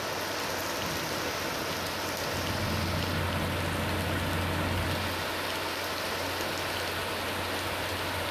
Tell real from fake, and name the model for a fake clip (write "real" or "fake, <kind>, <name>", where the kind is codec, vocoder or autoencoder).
real